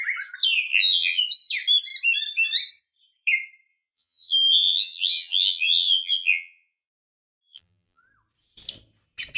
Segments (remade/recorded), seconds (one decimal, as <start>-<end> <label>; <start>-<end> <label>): 0.0-0.7 recorded; 0.7-1.2 remade; 1.2-3.7 recorded; 3.7-8.0 remade; 8.0-9.4 recorded